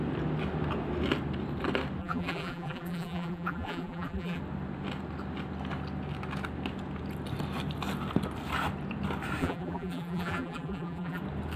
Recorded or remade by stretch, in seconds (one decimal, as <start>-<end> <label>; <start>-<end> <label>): 0.0-2.0 recorded; 2.0-4.4 remade; 4.4-9.4 recorded; 9.4-11.2 remade; 11.2-11.6 recorded